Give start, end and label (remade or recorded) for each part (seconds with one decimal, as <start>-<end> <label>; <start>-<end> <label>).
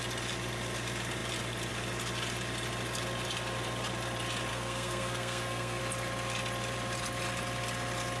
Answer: 0.0-4.5 recorded; 4.5-5.8 remade; 5.8-8.2 recorded